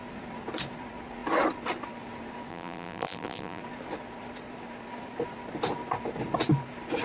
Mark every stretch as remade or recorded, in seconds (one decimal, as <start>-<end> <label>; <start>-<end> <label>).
0.0-2.5 recorded; 2.5-3.6 remade; 3.6-7.0 recorded